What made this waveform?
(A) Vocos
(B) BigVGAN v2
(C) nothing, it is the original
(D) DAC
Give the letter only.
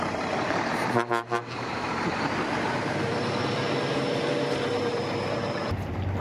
B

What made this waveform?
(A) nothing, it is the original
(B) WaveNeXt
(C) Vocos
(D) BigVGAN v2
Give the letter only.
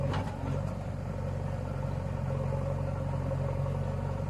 A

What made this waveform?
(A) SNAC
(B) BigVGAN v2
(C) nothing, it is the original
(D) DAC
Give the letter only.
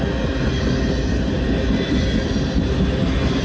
C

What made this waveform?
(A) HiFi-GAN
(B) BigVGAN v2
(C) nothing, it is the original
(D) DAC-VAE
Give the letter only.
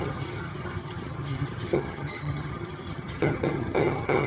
A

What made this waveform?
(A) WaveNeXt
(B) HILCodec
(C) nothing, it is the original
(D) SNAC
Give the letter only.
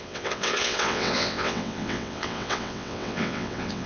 A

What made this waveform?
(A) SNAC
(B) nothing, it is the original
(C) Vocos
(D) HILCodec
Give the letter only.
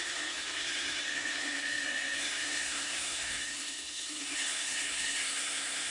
A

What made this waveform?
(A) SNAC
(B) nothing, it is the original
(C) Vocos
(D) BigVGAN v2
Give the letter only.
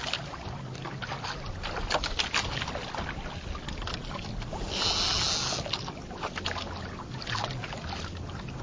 B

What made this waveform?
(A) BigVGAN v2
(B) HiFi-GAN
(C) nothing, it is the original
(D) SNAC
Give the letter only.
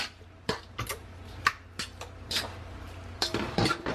A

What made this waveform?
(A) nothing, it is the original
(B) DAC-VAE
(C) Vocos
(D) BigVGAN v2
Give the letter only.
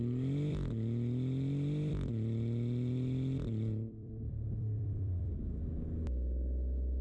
D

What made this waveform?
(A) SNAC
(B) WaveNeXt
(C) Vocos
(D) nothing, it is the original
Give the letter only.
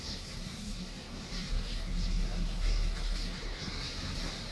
A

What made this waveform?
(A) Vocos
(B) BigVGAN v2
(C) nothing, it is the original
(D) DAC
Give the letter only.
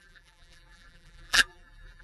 B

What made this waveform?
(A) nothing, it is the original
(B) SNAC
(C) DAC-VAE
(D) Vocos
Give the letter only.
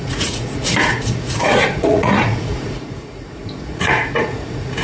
D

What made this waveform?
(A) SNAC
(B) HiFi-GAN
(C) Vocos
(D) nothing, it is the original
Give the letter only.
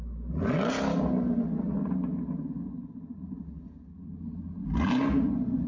D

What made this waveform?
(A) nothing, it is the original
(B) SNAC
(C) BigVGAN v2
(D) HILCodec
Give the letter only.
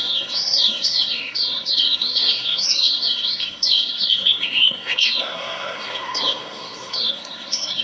B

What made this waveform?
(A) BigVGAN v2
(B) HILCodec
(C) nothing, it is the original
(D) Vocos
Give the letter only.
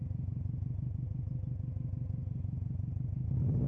C